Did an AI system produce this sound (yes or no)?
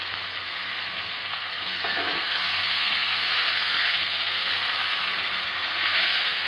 yes